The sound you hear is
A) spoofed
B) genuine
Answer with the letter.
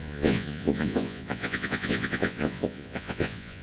A